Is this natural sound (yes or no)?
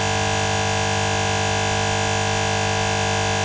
yes